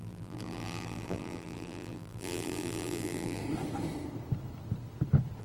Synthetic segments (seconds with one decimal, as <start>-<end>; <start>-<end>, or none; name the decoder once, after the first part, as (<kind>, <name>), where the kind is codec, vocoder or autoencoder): 0.0-3.4 (vocoder, BigVGAN v2)